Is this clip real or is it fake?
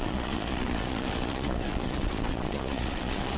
fake